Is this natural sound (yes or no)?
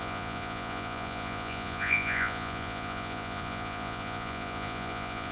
no